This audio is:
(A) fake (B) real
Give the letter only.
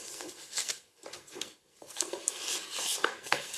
A